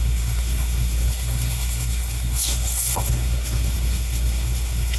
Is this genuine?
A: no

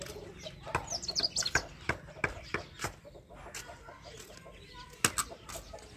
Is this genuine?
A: yes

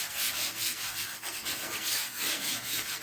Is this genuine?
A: no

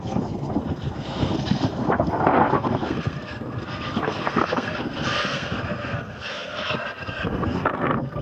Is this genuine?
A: no